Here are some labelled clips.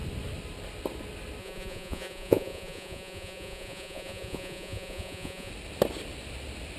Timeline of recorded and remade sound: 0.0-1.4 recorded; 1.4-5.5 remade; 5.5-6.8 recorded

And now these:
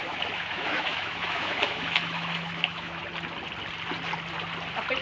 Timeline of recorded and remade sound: 0.0-3.0 remade; 3.0-5.0 recorded

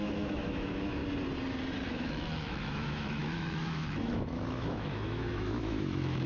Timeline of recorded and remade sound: 0.0-1.0 remade; 1.0-1.9 recorded; 1.9-6.3 remade

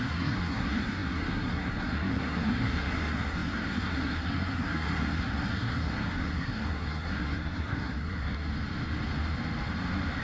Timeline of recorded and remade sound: 0.0-8.5 remade; 8.5-10.2 recorded

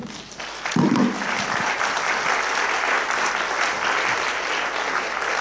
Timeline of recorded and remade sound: 0.0-5.4 recorded

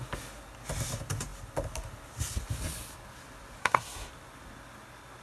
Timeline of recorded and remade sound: 0.0-3.6 recorded; 3.6-4.1 remade; 4.1-5.2 recorded

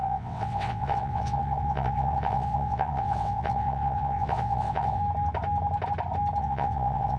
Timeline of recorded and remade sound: 0.0-5.0 remade; 5.0-6.4 recorded; 6.4-7.2 remade